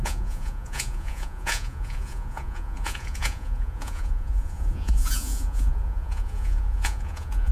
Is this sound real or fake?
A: fake